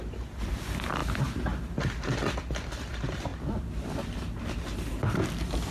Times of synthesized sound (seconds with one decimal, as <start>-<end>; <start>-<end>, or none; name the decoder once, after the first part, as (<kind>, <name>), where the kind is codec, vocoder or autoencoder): 0.0-1.0 (vocoder, BigVGAN v2); 2.3-3.3; 5.3-5.7